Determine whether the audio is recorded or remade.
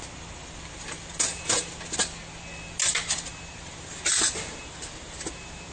recorded